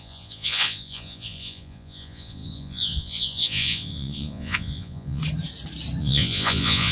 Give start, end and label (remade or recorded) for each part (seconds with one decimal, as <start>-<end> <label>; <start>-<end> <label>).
0.0-5.2 remade; 5.2-6.0 recorded; 6.0-6.9 remade